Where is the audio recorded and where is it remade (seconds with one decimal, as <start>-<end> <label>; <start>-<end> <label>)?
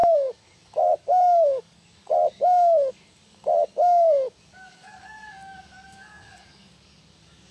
0.0-7.5 remade